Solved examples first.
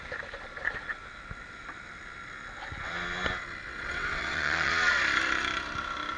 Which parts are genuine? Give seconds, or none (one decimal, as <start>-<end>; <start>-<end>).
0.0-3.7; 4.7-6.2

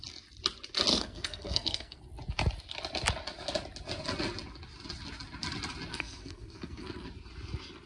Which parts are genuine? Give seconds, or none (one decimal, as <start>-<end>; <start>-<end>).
0.0-0.9; 2.0-5.9; 7.1-7.9

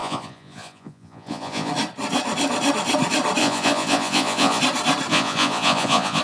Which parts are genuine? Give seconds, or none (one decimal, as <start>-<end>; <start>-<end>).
1.7-3.4; 4.6-5.1

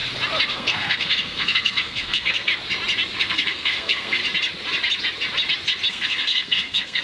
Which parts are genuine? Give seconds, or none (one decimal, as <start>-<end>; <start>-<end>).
0.0-0.5; 2.5-3.2; 4.2-5.9